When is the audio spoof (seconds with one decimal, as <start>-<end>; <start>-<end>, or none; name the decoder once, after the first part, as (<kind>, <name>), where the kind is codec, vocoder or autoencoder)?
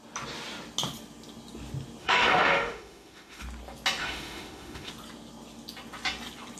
2.0-3.4 (autoencoder, DAC-VAE); 4.0-4.9